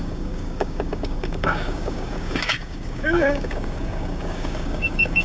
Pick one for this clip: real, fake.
fake